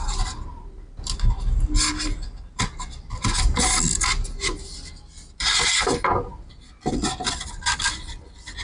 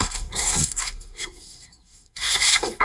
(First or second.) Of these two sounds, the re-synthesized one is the second